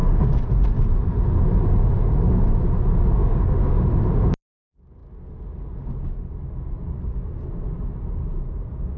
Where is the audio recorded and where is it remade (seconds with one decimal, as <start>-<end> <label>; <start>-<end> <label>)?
0.0-3.2 recorded; 3.2-3.8 remade; 3.8-9.0 recorded